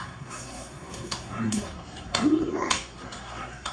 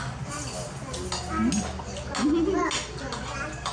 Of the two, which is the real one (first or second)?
second